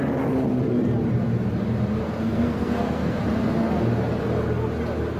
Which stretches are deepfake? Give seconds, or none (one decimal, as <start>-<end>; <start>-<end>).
2.0-3.2